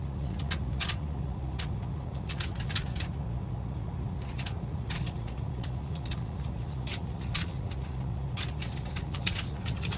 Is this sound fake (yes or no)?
yes